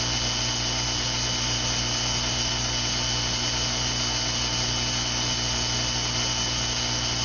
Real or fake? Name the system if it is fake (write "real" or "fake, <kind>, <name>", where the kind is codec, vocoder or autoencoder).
real